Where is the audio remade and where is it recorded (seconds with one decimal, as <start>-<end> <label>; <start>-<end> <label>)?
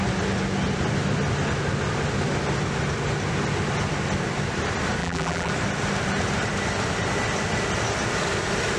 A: 0.0-5.0 recorded; 5.0-5.5 remade; 5.5-8.8 recorded